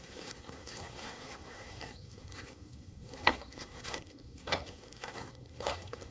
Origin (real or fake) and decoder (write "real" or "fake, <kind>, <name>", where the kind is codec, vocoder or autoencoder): fake, codec, SNAC